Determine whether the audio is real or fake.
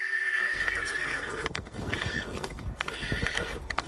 fake